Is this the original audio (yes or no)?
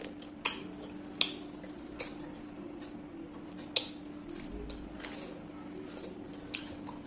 yes